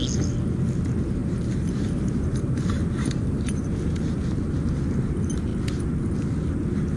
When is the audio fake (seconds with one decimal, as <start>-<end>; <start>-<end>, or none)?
1.2-4.8